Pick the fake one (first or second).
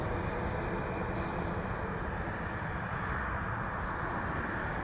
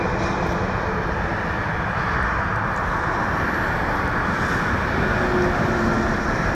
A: first